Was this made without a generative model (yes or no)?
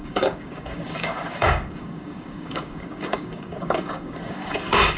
no